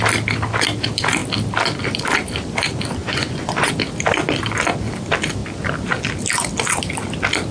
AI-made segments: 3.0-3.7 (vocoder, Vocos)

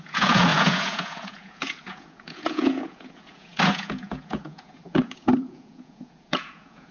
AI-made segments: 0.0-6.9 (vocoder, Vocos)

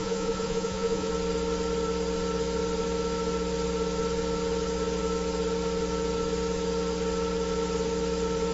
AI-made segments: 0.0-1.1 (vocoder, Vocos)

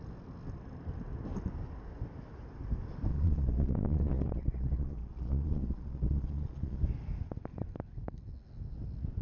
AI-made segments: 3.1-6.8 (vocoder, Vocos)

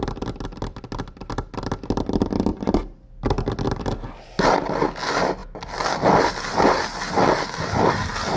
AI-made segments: none